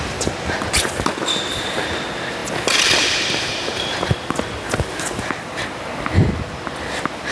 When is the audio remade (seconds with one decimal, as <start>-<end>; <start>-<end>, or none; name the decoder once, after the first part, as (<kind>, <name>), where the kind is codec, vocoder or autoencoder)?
none